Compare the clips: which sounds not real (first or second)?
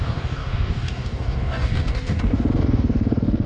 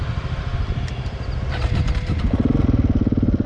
first